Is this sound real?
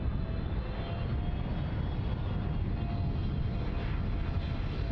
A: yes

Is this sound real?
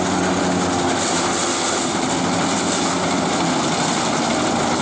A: yes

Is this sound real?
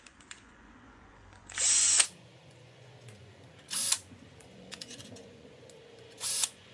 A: no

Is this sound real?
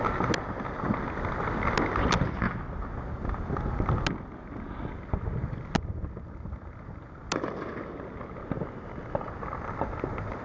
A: yes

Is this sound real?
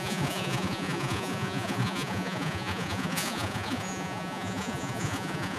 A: no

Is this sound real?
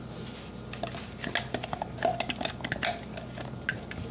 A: yes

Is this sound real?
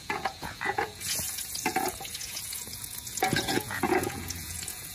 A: no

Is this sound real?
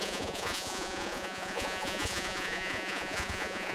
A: no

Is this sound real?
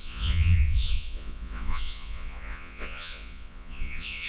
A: no